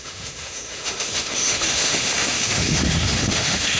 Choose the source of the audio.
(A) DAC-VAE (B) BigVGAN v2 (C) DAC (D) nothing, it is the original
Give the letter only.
A